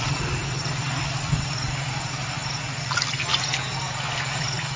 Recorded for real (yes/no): yes